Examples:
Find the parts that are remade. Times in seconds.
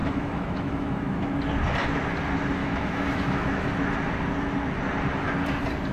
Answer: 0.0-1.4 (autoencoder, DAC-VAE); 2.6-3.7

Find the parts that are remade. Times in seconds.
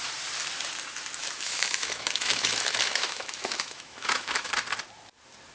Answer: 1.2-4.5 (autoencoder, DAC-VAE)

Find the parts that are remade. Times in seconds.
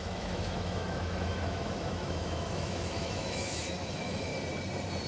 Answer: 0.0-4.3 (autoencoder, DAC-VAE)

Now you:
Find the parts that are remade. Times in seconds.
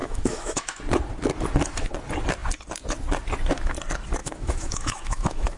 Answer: 0.0-0.8 (autoencoder, DAC-VAE); 4.2-5.6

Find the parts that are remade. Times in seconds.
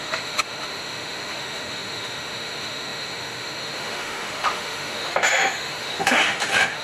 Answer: 0.0-6.8 (autoencoder, DAC-VAE)